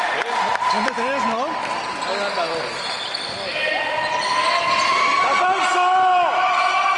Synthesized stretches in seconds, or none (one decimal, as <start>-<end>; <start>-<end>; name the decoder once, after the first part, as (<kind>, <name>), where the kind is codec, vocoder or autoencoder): 0.5-1.5 (vocoder, BigVGAN v2)

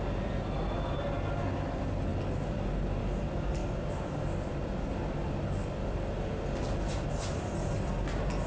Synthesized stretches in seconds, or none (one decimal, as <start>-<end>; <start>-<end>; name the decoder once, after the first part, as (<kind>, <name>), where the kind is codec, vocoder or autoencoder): none

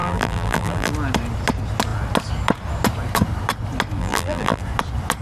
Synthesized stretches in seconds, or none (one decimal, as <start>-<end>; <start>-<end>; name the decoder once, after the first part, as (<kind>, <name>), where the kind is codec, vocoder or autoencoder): 0.0-0.9 (vocoder, BigVGAN v2); 4.0-4.6

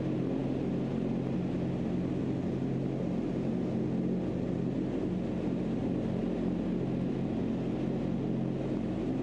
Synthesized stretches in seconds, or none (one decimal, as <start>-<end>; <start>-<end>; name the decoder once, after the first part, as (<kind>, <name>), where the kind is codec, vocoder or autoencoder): none

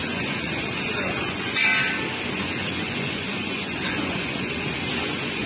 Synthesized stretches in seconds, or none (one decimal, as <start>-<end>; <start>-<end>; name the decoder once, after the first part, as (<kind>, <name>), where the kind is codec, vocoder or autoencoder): 0.0-1.7 (vocoder, Vocos); 2.3-5.5

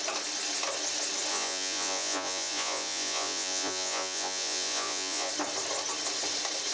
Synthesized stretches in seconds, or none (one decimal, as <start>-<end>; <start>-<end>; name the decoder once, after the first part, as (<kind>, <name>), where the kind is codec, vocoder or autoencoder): 1.3-5.3 (vocoder, Vocos)